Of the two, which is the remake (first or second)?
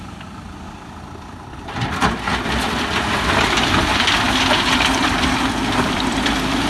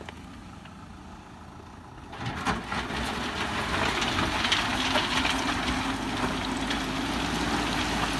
first